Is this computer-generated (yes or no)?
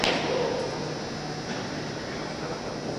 no